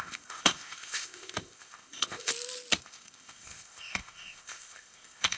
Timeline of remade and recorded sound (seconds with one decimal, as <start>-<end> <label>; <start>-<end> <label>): 0.0-2.3 remade; 2.3-2.8 recorded; 2.8-5.4 remade